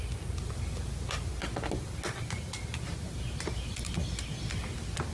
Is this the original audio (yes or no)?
yes